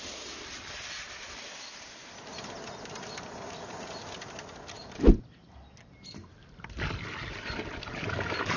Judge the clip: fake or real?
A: real